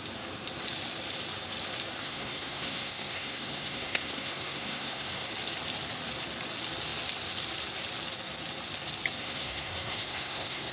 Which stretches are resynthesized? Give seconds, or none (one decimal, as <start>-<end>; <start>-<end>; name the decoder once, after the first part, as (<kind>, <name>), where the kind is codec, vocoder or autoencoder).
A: 2.0-5.3 (codec, SNAC); 9.2-10.7